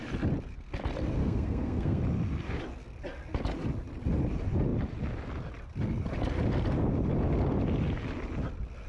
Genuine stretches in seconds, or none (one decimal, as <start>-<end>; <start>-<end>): 0.0-1.2; 2.0-8.9